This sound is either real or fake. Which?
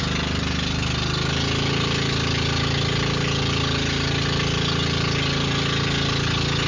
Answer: real